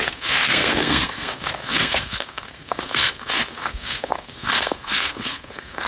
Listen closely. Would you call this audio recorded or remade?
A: remade